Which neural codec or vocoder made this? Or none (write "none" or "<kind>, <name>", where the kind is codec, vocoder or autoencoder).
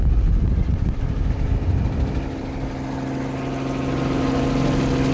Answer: none